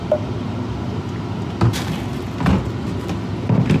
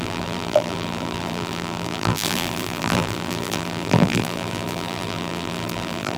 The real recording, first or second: first